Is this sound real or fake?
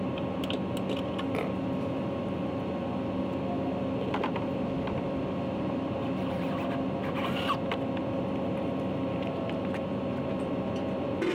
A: real